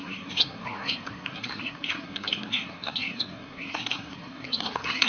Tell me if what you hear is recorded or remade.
remade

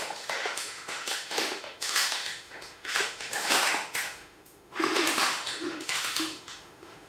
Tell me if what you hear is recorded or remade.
remade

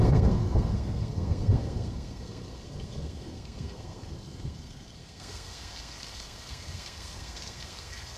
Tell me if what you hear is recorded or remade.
remade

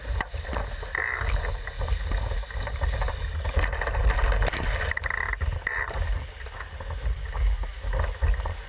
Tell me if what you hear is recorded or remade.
recorded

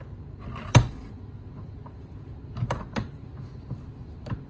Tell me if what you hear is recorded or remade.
recorded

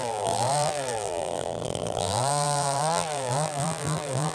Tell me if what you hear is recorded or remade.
remade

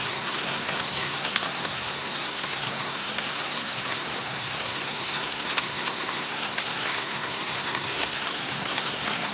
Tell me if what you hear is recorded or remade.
remade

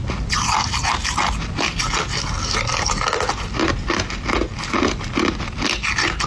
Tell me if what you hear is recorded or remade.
recorded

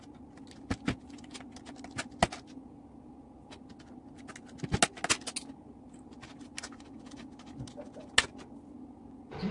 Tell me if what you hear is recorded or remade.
recorded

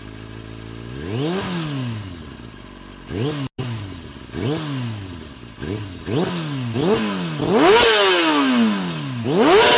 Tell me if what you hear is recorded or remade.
recorded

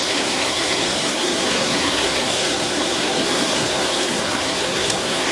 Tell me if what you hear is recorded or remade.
remade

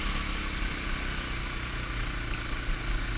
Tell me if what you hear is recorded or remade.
recorded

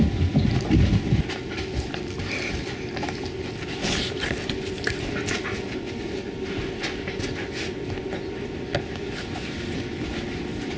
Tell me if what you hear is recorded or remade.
recorded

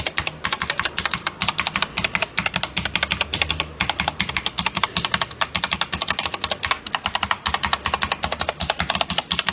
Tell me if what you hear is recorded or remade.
recorded